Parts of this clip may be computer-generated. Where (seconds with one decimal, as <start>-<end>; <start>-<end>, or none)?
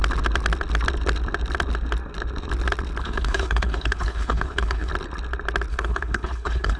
3.0-4.9; 5.7-6.8